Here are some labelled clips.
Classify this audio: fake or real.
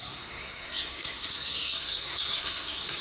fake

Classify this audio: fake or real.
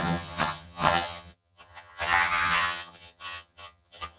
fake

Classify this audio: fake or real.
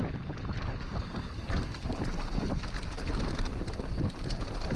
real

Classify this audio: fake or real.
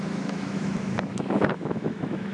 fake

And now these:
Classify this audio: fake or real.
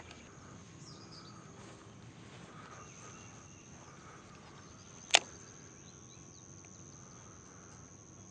real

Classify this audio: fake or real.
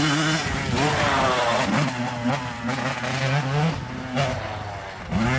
real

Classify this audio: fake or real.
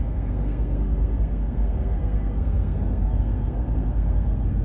fake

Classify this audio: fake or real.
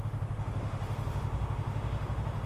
fake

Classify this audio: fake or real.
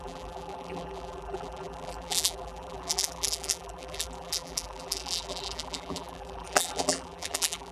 fake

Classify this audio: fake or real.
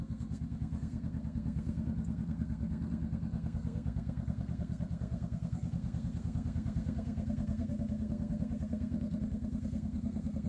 fake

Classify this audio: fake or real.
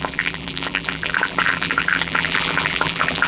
fake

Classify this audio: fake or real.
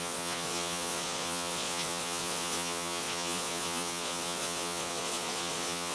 fake